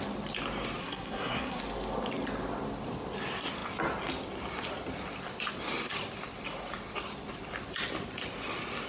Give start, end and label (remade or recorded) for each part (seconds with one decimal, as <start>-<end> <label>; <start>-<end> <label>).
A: 0.0-0.8 recorded; 0.8-1.6 remade; 1.6-8.9 recorded